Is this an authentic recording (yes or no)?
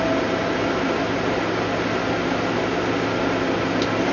yes